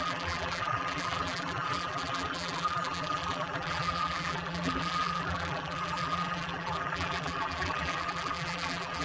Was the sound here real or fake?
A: fake